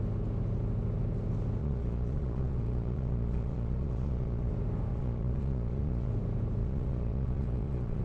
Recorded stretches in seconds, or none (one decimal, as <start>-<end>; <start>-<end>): 0.0-1.6; 4.5-4.9; 6.1-6.6

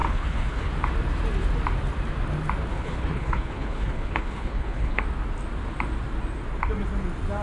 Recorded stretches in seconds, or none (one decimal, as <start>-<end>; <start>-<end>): 0.7-2.7; 5.0-7.4